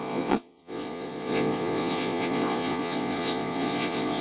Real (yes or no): no